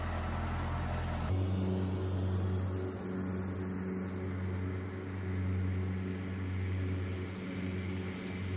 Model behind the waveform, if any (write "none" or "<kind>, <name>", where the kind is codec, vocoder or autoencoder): none